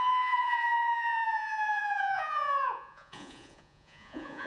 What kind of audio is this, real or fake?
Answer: fake